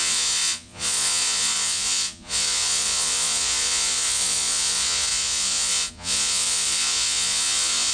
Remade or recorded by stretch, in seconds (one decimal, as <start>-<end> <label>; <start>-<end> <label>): 0.0-7.9 remade